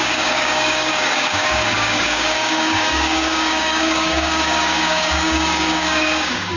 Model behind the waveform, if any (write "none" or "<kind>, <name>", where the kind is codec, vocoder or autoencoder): codec, DAC